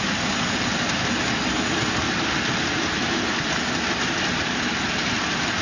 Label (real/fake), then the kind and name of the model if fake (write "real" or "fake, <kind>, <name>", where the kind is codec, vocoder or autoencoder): real